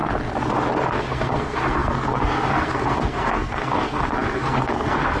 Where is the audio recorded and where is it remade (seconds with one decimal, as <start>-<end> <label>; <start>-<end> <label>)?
0.0-0.9 recorded; 0.9-5.2 remade